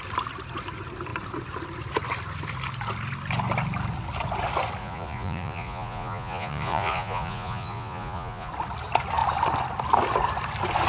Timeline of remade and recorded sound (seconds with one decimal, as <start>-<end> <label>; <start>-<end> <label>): 0.0-4.8 recorded; 4.8-8.5 remade; 8.5-10.9 recorded